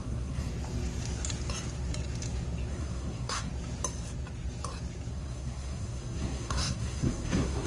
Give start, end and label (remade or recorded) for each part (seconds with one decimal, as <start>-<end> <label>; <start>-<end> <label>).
0.0-0.5 remade; 0.5-2.7 recorded; 2.7-3.5 remade; 3.5-5.1 recorded; 5.1-7.7 remade